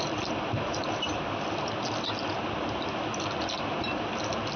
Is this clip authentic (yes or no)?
yes